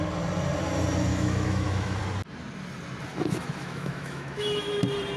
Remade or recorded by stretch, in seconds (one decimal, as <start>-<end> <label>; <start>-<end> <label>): 0.0-1.1 recorded; 1.1-2.0 remade; 2.0-3.1 recorded; 3.1-4.8 remade; 4.8-5.2 recorded